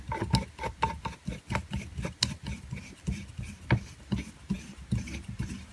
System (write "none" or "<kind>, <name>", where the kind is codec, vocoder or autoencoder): none